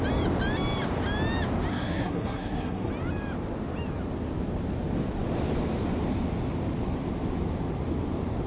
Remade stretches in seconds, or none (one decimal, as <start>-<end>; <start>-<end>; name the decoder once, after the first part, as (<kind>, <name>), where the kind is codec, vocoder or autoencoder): 1.7-2.9 (codec, SNAC)